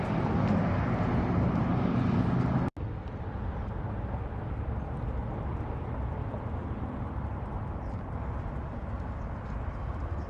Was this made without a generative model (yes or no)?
yes